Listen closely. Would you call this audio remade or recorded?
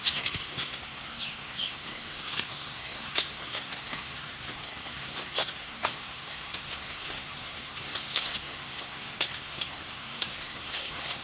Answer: remade